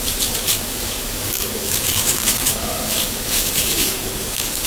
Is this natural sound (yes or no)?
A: no